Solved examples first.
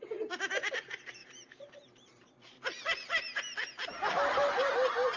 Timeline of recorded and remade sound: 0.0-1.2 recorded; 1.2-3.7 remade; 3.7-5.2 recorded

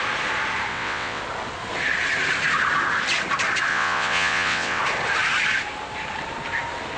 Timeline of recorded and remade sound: 0.0-0.7 recorded; 0.7-1.2 remade; 1.2-3.7 recorded; 3.7-4.8 remade; 4.8-7.0 recorded

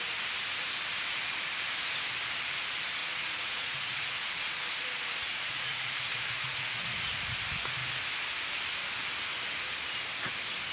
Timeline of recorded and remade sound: 0.0-3.0 recorded; 3.0-4.7 remade; 4.7-5.2 recorded; 5.2-7.1 remade; 7.1-10.7 recorded

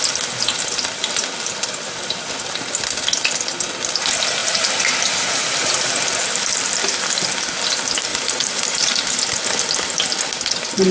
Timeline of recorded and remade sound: 0.0-4.4 recorded; 4.4-5.3 remade; 5.3-8.1 recorded; 8.1-9.2 remade; 9.2-10.9 recorded